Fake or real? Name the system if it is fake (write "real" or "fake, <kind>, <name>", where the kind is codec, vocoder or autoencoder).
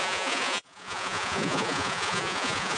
fake, vocoder, Vocos